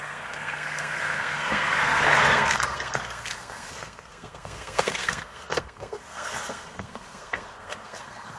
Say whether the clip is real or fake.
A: fake